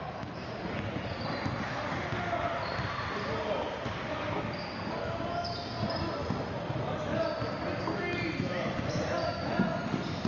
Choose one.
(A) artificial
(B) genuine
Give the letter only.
B